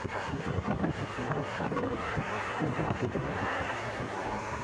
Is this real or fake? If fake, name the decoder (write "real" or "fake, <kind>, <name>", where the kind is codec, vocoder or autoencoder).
fake, codec, SNAC